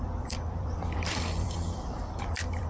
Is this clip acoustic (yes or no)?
no